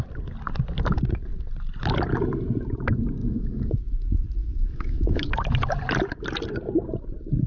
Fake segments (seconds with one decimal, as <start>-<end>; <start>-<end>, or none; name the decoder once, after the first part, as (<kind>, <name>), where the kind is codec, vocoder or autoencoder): 3.2-3.8 (autoencoder, DAC-VAE); 4.4-5.3